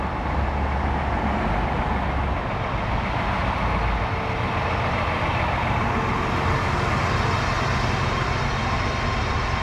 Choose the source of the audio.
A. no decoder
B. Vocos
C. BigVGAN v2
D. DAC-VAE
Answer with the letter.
A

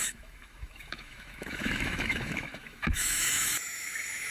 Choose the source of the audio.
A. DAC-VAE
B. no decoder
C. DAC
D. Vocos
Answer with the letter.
A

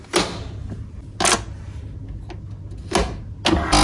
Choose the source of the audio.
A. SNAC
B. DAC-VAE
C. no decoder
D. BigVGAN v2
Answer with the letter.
C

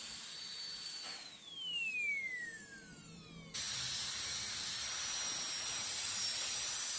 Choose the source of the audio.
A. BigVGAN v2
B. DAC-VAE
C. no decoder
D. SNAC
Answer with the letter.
C